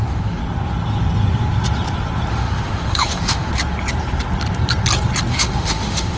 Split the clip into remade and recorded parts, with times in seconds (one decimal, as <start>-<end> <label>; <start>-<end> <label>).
0.0-0.4 remade; 0.4-2.3 recorded; 2.3-3.5 remade; 3.5-5.3 recorded; 5.3-6.2 remade

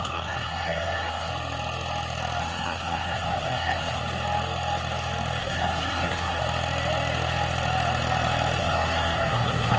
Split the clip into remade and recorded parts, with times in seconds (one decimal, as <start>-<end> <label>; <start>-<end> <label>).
0.0-1.3 remade; 1.3-2.4 recorded; 2.4-4.0 remade; 4.0-5.4 recorded; 5.4-6.4 remade; 6.4-8.6 recorded; 8.6-9.8 remade

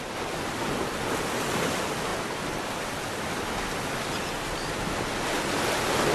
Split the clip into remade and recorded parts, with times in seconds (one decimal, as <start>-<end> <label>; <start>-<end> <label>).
0.0-6.1 recorded

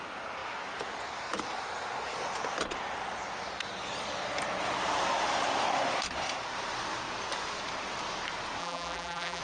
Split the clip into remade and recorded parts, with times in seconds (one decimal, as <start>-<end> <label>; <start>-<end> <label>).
0.0-8.6 recorded; 8.6-9.4 remade

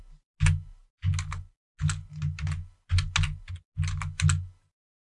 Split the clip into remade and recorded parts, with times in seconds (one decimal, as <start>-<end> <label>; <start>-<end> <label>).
0.0-5.1 recorded

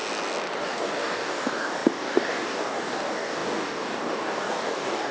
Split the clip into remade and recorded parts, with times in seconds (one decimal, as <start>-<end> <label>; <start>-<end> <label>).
0.0-0.6 recorded; 0.6-5.1 remade

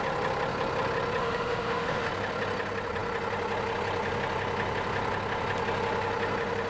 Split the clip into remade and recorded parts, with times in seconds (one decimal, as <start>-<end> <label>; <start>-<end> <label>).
0.0-1.2 recorded; 1.2-2.1 remade; 2.1-6.7 recorded